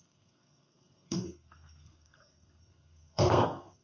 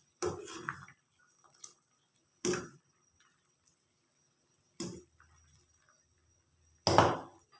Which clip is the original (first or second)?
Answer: second